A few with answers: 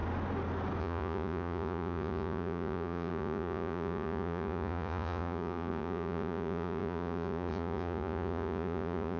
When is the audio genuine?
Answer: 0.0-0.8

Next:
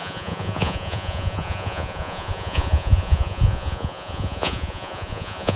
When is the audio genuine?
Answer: none

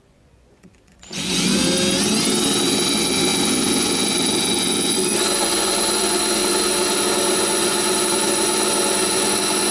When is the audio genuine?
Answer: 1.6-2.6; 6.4-7.3

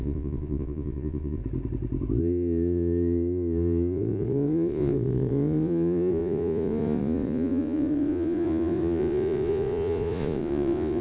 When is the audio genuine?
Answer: 1.4-2.2

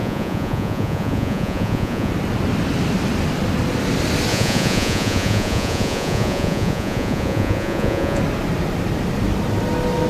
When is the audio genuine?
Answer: 2.1-4.3; 8.2-10.1

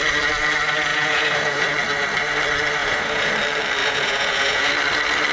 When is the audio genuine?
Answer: 0.0-0.9; 1.7-2.8; 3.3-3.8; 4.7-5.3

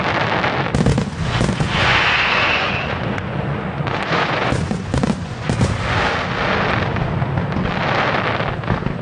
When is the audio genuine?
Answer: 0.0-0.9; 5.7-9.0